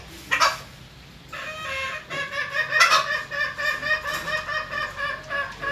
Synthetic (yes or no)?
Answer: no